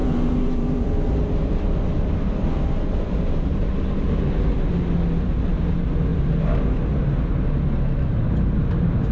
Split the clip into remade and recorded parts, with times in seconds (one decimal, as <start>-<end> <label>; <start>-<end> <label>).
0.0-3.4 remade; 3.4-9.1 recorded